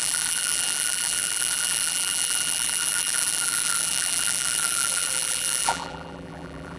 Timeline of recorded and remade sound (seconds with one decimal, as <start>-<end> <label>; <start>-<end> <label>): 0.0-6.8 remade